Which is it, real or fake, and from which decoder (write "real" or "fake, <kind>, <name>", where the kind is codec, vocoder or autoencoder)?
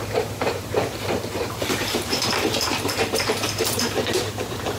fake, vocoder, BigVGAN v2